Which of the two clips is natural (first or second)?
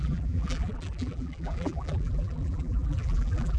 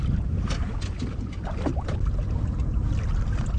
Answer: second